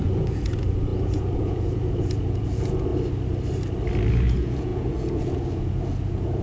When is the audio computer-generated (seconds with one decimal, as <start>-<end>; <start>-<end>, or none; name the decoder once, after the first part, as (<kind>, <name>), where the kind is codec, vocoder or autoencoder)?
0.0-2.9 (vocoder, Vocos); 4.1-6.4